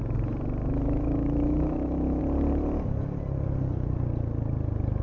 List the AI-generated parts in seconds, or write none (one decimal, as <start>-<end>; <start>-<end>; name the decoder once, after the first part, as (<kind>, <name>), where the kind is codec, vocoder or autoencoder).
0.6-2.2 (autoencoder, DAC-VAE)